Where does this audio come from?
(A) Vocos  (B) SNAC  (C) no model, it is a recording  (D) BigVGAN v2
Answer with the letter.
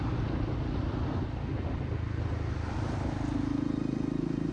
C